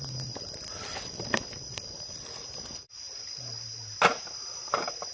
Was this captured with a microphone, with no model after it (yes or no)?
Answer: yes